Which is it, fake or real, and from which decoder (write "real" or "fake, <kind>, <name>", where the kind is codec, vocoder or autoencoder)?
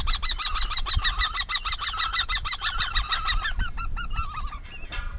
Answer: real